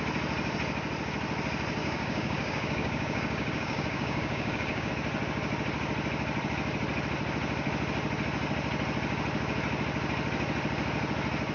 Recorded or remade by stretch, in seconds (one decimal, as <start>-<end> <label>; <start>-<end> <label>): 0.0-1.8 recorded; 1.8-4.9 remade; 4.9-11.5 recorded